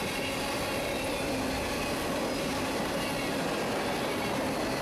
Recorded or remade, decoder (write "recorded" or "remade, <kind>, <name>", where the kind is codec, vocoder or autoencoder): recorded